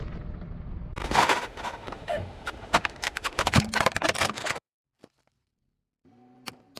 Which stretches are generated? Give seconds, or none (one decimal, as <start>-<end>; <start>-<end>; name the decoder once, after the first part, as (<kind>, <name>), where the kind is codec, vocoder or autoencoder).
1.0-3.6 (autoencoder, DAC-VAE); 4.2-4.8